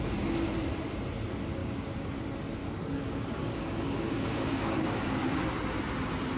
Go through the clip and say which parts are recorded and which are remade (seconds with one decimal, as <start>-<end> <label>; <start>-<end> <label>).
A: 0.0-1.6 recorded; 1.6-2.2 remade; 2.2-2.6 recorded; 2.6-5.4 remade; 5.4-6.4 recorded